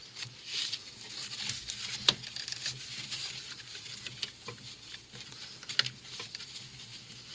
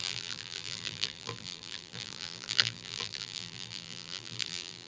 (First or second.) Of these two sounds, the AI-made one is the second